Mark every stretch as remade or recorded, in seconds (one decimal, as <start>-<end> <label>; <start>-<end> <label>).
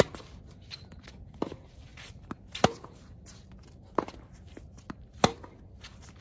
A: 0.0-6.2 recorded